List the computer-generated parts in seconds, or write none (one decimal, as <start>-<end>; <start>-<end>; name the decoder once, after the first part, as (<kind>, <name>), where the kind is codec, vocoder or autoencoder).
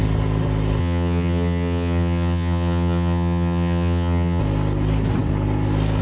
0.8-4.4 (vocoder, HiFi-GAN)